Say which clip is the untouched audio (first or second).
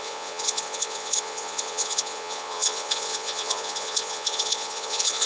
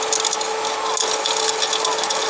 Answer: second